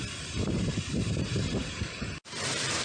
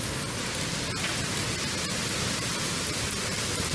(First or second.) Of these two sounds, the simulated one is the first